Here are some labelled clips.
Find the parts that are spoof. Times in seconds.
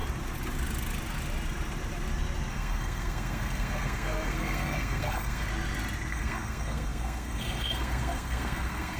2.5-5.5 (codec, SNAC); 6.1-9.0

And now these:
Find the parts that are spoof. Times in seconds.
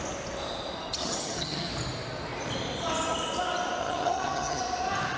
1.0-1.7 (vocoder, HiFi-GAN); 3.8-4.6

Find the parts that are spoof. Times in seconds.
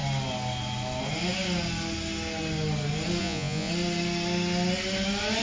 3.2-3.7 (vocoder, Vocos)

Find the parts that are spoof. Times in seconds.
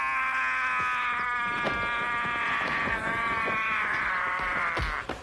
2.4-4.7 (vocoder, Vocos)